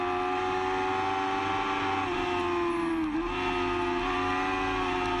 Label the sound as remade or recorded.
recorded